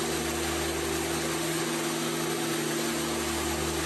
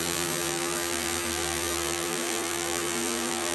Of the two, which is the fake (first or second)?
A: second